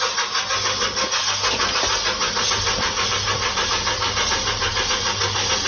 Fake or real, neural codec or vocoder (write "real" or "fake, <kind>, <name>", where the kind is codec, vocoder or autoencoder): real